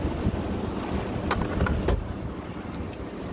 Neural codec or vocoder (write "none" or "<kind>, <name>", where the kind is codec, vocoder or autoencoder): none